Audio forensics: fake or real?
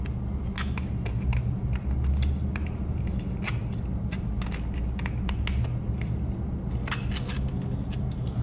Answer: real